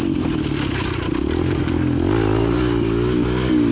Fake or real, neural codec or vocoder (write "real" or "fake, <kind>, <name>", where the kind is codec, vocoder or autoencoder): real